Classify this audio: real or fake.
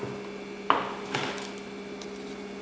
real